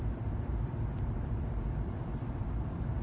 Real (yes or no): no